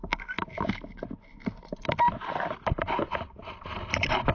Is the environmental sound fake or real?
real